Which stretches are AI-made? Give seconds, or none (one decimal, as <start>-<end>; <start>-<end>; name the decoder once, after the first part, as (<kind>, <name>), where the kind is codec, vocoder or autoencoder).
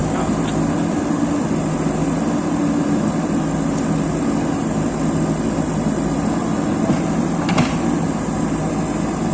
none